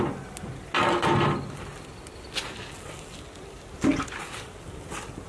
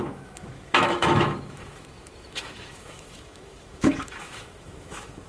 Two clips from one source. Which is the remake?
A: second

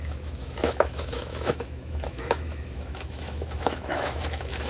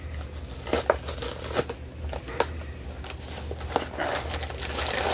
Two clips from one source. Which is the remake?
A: first